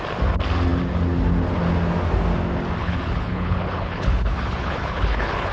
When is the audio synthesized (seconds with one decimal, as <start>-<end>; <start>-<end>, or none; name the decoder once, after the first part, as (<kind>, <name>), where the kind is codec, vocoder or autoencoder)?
2.8-5.5 (codec, HILCodec)